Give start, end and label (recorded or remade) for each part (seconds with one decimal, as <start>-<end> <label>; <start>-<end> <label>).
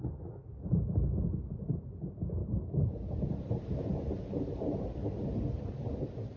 0.0-2.4 recorded; 2.4-6.4 remade